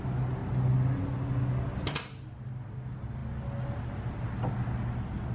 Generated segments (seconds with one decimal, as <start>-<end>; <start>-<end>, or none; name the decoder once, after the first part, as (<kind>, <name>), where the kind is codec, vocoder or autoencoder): none